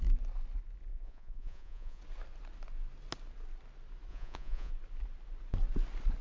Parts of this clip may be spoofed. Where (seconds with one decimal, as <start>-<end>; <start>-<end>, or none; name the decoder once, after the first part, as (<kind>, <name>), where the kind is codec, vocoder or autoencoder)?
0.9-2.0 (vocoder, Vocos); 4.1-4.7